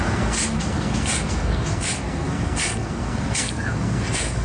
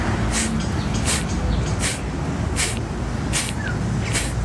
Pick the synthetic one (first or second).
first